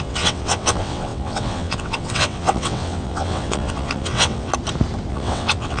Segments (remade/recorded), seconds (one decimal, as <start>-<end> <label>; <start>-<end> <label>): 0.0-4.5 remade; 4.5-5.1 recorded; 5.1-5.8 remade